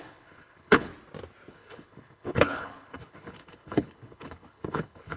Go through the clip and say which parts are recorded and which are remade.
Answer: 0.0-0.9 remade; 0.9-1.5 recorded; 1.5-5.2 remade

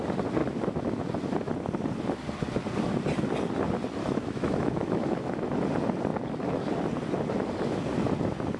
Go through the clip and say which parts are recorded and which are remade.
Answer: 0.0-0.4 recorded; 0.4-1.0 remade; 1.0-4.0 recorded; 4.0-5.3 remade; 5.3-8.6 recorded

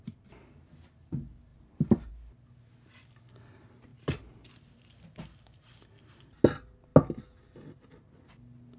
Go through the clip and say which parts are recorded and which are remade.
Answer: 0.0-1.5 recorded; 1.5-2.1 remade; 2.1-3.9 recorded; 3.9-6.1 remade; 6.1-8.8 recorded

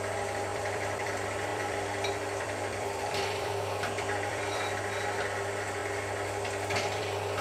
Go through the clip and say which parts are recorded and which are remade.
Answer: 0.0-0.5 recorded; 0.5-1.1 remade; 1.1-1.5 recorded; 1.5-4.8 remade; 4.8-7.4 recorded

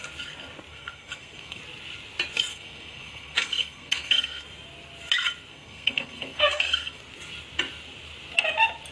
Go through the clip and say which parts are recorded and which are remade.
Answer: 0.0-0.7 recorded; 0.7-1.6 remade; 1.6-2.5 recorded; 2.5-4.4 remade; 4.4-5.5 recorded; 5.5-7.0 remade; 7.0-8.9 recorded

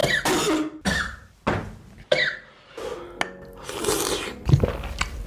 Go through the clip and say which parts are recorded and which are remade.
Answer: 0.0-1.0 recorded; 1.0-2.9 remade; 2.9-5.3 recorded